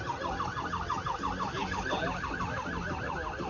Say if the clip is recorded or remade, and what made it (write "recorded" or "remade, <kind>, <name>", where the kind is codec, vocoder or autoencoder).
recorded